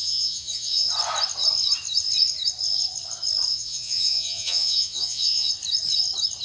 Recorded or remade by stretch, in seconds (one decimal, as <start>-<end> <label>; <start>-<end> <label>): 0.0-0.9 remade; 0.9-3.5 recorded; 3.5-5.5 remade; 5.5-6.4 recorded